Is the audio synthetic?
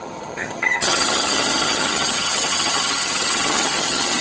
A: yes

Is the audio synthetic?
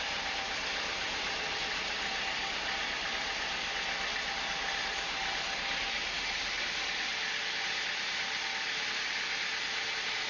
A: no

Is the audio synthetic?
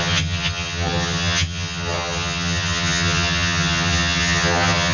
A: yes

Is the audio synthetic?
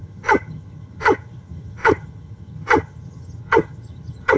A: yes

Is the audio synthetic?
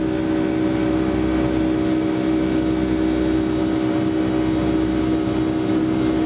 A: no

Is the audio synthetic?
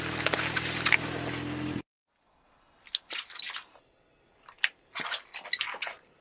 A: no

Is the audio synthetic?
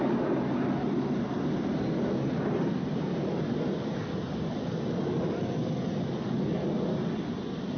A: no